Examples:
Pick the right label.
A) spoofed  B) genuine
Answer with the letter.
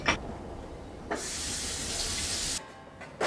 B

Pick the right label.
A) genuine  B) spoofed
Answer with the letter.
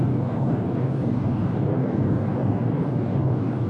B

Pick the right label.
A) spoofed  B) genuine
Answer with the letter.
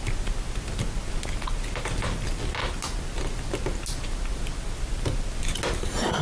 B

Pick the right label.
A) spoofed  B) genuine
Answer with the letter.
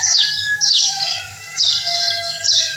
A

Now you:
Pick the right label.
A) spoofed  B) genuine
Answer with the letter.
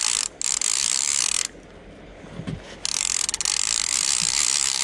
B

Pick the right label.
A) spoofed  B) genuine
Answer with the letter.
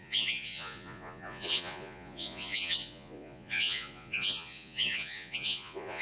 A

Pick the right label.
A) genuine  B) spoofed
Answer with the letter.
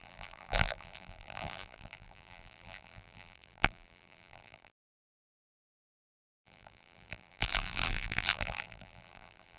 B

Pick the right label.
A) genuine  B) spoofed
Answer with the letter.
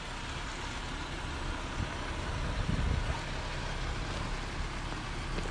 A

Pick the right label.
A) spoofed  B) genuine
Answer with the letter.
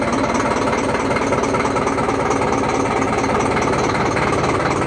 B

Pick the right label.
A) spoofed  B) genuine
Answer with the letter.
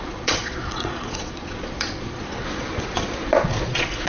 A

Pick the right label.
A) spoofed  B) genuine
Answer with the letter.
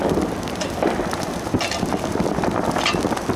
B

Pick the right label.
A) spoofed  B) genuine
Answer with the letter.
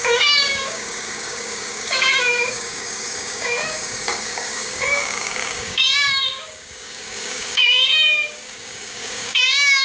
A